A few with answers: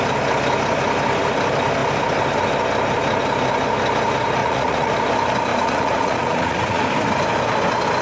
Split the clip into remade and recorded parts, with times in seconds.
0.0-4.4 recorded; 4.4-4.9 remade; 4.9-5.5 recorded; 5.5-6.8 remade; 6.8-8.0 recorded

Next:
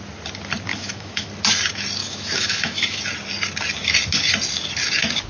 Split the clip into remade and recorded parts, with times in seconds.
0.0-0.7 recorded; 0.7-1.3 remade; 1.3-2.0 recorded; 2.0-3.0 remade; 3.0-5.3 recorded

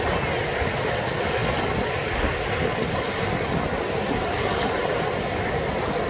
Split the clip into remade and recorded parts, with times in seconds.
0.0-6.1 recorded

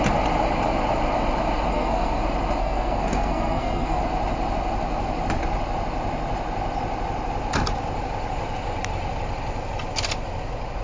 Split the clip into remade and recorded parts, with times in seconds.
0.0-1.7 recorded; 1.7-2.2 remade; 2.2-2.6 recorded; 2.6-4.0 remade; 4.0-10.8 recorded

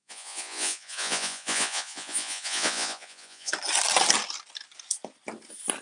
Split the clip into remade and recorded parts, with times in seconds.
0.0-3.5 remade; 3.5-5.8 recorded